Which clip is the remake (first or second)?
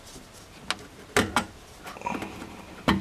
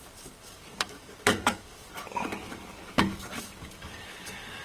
second